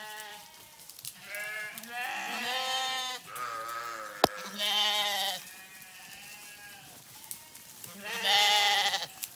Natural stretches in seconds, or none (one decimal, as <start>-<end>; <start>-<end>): 0.0-9.4